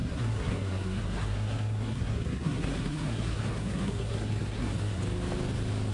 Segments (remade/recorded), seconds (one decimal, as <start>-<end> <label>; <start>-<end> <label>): 0.0-5.0 remade; 5.0-5.9 recorded